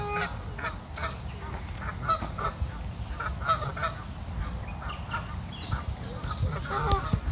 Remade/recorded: recorded